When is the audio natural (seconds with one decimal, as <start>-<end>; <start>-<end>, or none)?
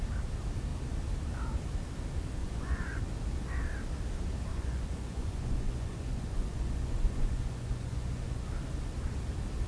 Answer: 0.0-2.4; 3.0-4.5; 8.5-9.7